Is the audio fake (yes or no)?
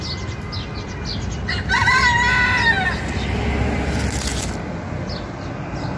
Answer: no